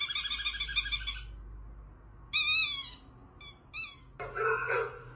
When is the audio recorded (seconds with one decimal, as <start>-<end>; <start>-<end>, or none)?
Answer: 0.0-5.2